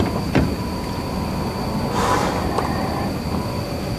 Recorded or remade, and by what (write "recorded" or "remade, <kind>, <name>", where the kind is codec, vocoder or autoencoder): recorded